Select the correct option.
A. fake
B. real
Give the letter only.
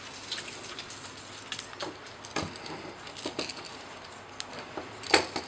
B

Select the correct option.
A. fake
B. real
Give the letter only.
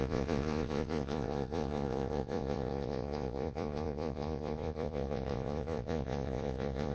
A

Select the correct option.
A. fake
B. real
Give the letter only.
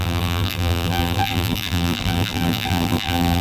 A